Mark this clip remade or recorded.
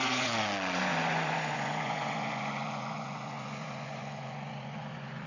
remade